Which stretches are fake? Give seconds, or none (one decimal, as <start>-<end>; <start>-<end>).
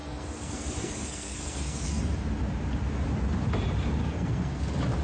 0.0-2.0; 4.0-4.6